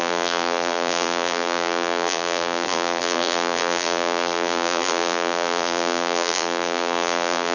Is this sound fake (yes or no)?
yes